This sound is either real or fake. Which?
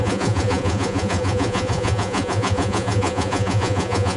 fake